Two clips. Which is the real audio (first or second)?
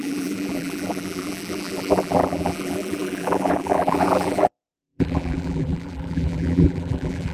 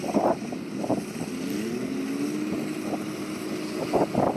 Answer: second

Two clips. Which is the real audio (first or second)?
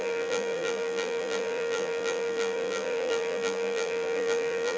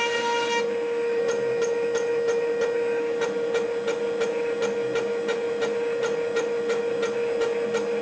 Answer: second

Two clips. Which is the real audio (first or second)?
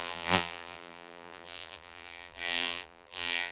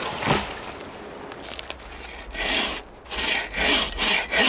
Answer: second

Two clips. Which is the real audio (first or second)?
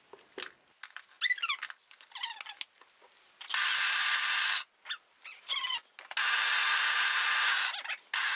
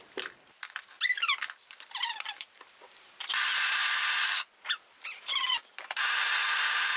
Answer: first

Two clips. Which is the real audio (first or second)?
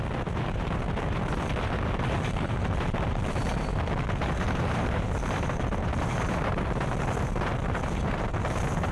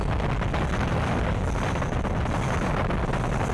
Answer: second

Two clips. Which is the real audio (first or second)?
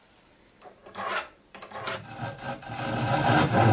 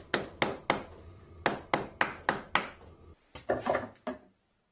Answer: second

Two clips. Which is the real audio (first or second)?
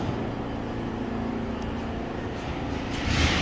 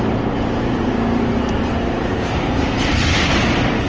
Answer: first